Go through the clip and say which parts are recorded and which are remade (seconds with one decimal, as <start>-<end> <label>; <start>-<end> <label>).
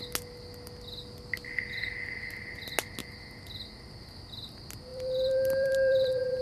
0.0-4.9 recorded; 4.9-6.4 remade